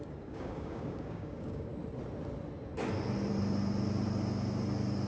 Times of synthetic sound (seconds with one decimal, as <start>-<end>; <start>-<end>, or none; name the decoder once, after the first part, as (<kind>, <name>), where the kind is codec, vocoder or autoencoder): 0.0-1.7 (codec, DAC)